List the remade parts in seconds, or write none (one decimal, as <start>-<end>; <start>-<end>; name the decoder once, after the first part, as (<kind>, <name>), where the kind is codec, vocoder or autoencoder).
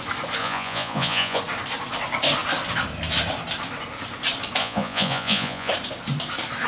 0.4-1.4 (vocoder, Vocos); 4.6-5.7